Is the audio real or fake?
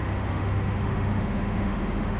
fake